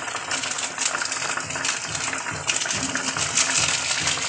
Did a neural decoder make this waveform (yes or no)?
no